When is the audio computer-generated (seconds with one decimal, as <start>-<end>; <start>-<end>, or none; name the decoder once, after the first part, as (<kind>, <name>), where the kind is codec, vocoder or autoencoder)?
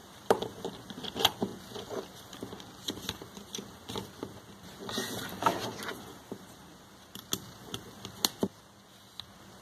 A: 0.0-0.7 (vocoder, BigVGAN v2); 5.9-6.6